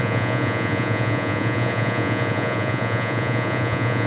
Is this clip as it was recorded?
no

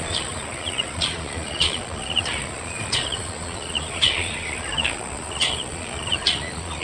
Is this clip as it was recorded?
no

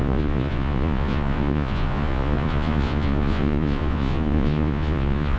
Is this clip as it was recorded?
no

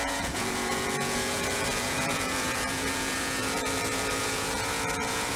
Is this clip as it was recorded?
no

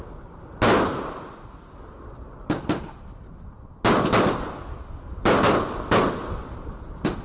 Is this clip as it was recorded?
yes